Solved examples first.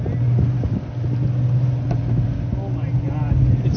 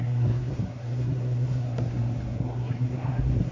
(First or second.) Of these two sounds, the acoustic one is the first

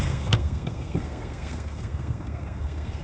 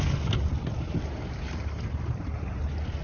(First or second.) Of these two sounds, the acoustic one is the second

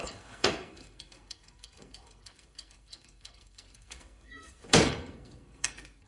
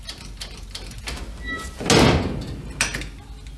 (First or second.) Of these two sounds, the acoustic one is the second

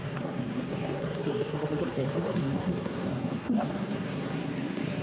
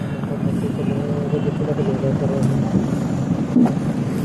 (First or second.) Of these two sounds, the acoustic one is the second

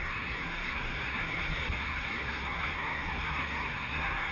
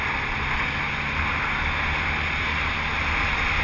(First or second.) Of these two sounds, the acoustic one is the second